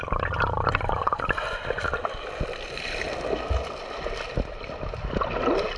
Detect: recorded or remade recorded